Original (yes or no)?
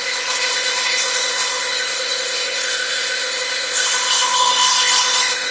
no